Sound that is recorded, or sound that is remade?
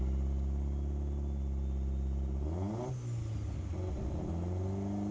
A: recorded